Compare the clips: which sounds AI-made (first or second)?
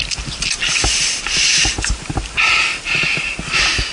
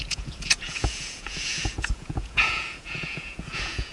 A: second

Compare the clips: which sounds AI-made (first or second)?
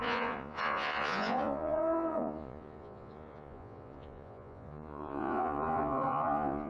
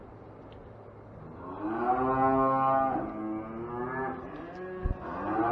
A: first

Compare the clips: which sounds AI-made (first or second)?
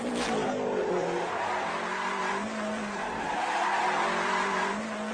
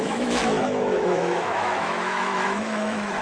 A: second